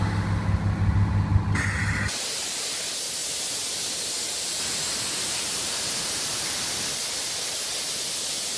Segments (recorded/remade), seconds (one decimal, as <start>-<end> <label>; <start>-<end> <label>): 0.0-8.6 recorded